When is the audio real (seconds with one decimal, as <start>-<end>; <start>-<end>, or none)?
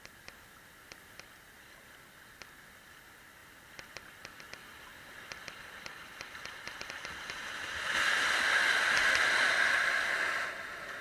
0.0-4.9; 9.6-11.0